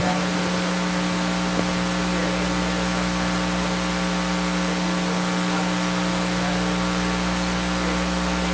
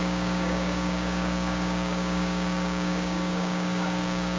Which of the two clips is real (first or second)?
first